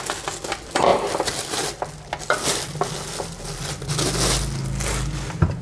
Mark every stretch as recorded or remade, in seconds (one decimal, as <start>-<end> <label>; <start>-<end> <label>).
0.0-5.6 recorded